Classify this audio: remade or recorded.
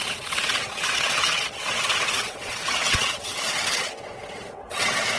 remade